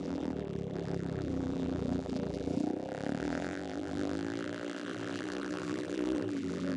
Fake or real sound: fake